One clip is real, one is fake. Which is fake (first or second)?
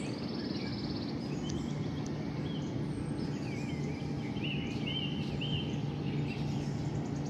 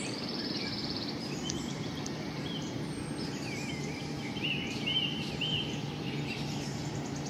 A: second